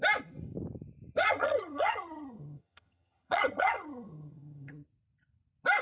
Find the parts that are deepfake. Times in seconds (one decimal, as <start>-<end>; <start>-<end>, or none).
1.2-4.7